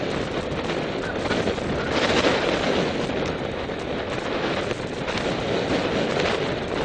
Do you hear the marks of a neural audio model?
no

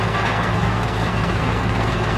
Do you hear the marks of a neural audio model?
yes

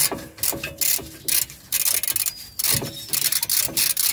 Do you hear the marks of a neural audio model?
no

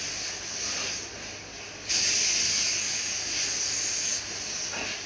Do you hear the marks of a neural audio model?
no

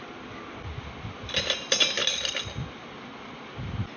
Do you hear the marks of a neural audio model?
no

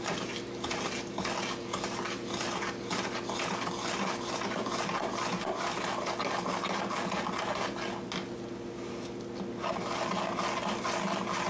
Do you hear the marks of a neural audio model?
no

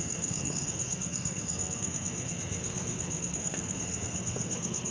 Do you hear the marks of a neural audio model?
yes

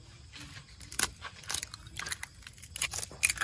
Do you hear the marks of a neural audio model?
no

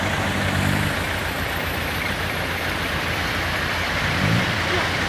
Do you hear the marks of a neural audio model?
no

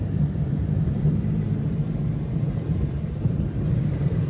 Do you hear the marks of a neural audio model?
yes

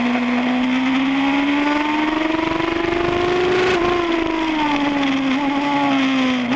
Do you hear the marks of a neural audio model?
no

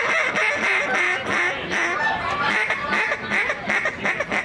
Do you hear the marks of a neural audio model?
no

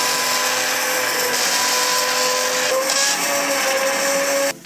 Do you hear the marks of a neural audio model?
no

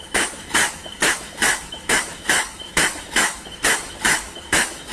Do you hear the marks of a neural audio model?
yes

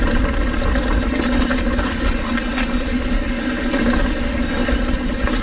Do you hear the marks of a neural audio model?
no